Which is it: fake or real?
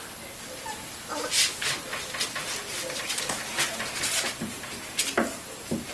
real